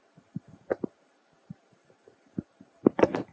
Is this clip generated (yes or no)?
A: yes